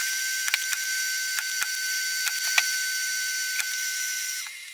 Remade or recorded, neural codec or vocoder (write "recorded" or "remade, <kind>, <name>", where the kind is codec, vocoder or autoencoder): recorded